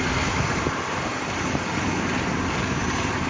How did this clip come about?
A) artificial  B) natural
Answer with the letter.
B